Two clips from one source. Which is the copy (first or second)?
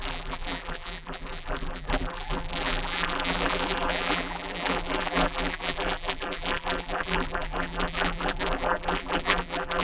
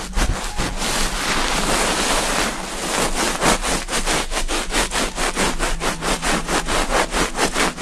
first